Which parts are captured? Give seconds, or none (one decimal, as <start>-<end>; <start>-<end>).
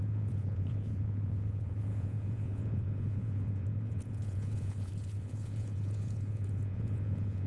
none